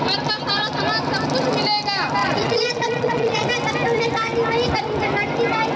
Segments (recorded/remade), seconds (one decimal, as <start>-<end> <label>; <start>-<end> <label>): 0.0-2.2 recorded; 2.2-3.5 remade; 3.5-5.8 recorded